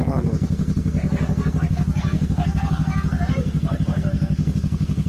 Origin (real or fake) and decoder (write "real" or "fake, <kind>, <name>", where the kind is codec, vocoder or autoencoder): fake, codec, SNAC